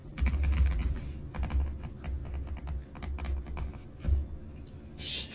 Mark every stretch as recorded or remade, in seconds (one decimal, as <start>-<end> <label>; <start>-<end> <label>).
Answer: 0.0-1.0 remade; 1.0-5.3 recorded